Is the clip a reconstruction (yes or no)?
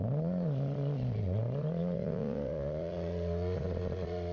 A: yes